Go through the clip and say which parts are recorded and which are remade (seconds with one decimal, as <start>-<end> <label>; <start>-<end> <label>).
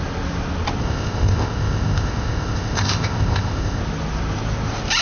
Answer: 0.0-0.8 recorded; 0.8-3.8 remade; 3.8-5.0 recorded